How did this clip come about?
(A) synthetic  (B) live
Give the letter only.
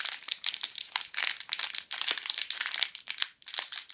B